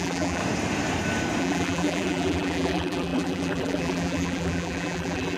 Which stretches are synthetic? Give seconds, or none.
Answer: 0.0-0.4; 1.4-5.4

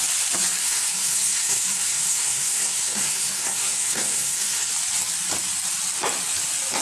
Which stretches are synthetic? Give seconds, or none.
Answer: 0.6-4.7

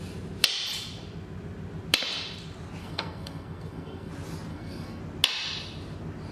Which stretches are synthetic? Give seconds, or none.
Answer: 2.8-4.1; 4.5-5.0

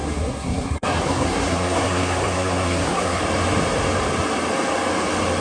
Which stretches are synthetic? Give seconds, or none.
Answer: 0.0-3.2

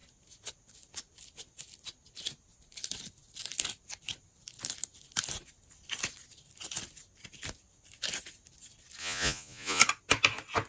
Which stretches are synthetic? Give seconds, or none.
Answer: 9.0-9.8

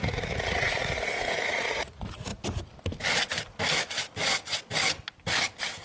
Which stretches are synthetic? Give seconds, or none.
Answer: 0.0-2.3